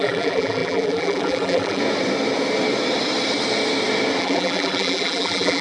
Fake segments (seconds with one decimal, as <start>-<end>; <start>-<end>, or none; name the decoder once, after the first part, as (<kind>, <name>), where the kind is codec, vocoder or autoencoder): 0.0-1.8 (vocoder, BigVGAN v2); 4.2-5.6